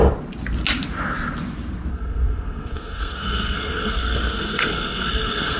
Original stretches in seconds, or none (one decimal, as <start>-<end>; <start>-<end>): 0.0-1.9